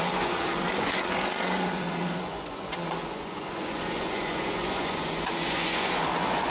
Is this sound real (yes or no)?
no